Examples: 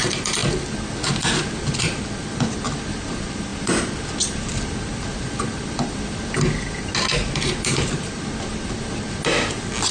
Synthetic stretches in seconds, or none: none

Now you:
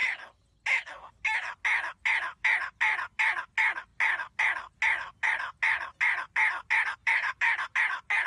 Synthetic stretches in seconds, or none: 7.0-7.8 (vocoder, BigVGAN v2)

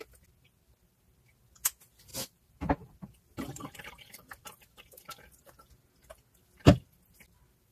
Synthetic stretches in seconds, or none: 2.1-5.7 (vocoder, BigVGAN v2)

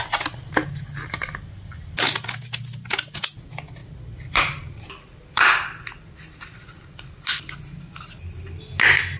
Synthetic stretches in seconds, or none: 3.8-7.5 (vocoder, BigVGAN v2)

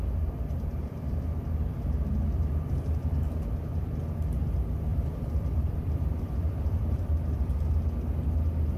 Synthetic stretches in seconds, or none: 0.7-4.0 (vocoder, BigVGAN v2); 4.9-7.5

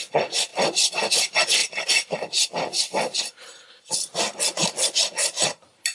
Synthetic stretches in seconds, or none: 0.5-1.1 (vocoder, BigVGAN v2)

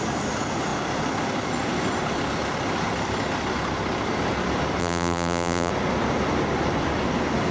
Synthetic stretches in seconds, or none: 4.8-5.7 (vocoder, BigVGAN v2)

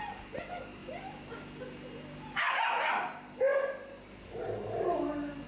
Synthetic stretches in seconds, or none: none